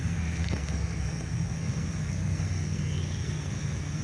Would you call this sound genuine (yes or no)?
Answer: no